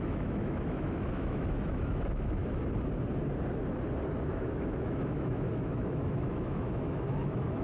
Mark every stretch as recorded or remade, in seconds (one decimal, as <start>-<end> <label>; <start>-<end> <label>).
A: 0.0-2.4 remade; 2.4-4.3 recorded; 4.3-7.6 remade